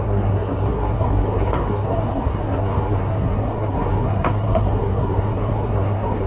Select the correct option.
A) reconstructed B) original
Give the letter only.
A